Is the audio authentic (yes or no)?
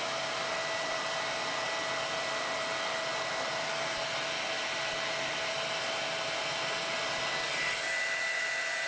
yes